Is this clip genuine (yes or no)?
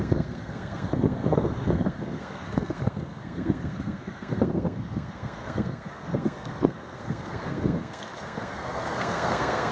no